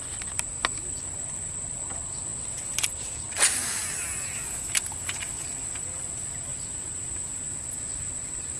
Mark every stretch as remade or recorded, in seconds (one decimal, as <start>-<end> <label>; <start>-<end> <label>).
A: 0.0-8.6 recorded

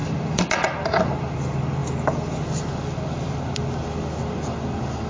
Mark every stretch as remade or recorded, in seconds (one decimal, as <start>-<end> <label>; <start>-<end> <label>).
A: 0.0-5.1 recorded

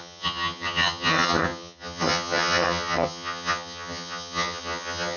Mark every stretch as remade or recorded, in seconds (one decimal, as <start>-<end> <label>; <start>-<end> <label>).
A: 0.0-5.2 remade

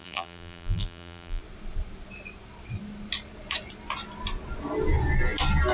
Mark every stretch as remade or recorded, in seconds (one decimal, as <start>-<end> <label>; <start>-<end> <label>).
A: 0.0-1.4 remade; 1.4-5.7 recorded

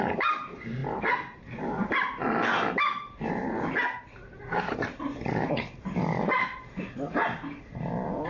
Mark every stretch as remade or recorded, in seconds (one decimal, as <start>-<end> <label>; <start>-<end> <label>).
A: 0.0-0.8 recorded; 0.8-1.6 remade; 1.6-2.2 recorded; 2.2-6.9 remade; 6.9-8.3 recorded